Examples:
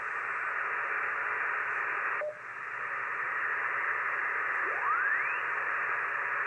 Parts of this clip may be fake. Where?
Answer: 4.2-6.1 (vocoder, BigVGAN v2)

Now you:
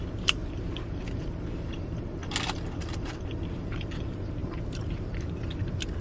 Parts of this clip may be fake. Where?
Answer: 0.0-0.4 (vocoder, BigVGAN v2); 1.2-2.2; 3.3-6.0

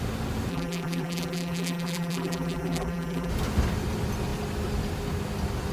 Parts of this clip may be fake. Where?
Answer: 0.5-3.3 (vocoder, BigVGAN v2)

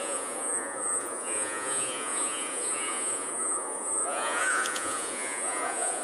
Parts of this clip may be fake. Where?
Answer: 0.0-6.0 (vocoder, Vocos)

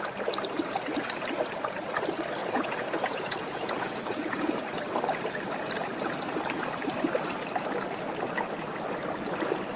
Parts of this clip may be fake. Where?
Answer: 2.4-4.6 (vocoder, Vocos)

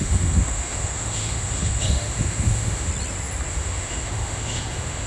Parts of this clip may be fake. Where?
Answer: 0.0-2.9 (autoencoder, DAC-VAE); 3.5-5.1